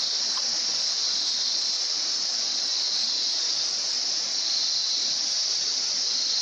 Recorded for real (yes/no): yes